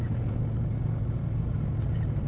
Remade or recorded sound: recorded